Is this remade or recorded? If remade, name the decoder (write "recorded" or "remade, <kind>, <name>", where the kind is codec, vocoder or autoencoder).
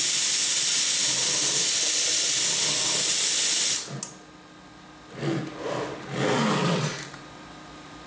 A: recorded